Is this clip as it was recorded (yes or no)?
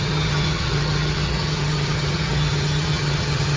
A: no